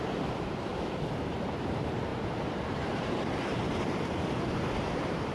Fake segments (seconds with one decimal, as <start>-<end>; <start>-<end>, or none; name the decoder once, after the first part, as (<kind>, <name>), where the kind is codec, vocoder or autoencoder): 0.0-0.7 (vocoder, BigVGAN v2); 1.2-5.3